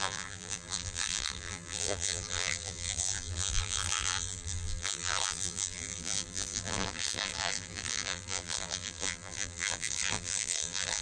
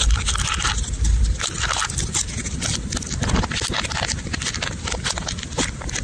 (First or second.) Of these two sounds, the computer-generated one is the first